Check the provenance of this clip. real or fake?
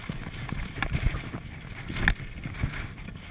real